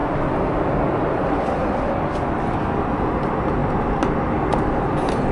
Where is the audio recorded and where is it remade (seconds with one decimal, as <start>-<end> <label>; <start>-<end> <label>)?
0.0-5.3 recorded